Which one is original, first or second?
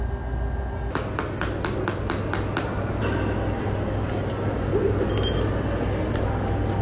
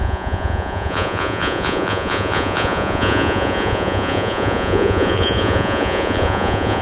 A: first